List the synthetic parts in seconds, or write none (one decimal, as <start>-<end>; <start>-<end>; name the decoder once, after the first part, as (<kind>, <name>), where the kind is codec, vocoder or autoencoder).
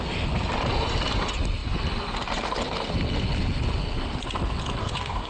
4.8-5.3 (codec, DAC)